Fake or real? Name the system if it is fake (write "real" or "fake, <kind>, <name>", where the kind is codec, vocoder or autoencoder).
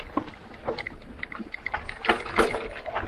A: real